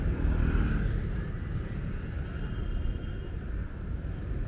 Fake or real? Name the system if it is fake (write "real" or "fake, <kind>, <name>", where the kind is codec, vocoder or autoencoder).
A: real